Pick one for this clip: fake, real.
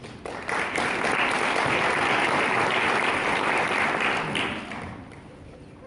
real